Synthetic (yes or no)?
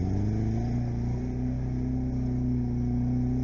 no